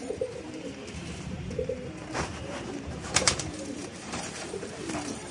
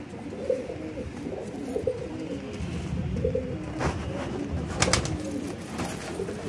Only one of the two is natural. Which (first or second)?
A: second